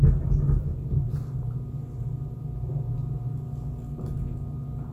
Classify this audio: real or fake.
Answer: real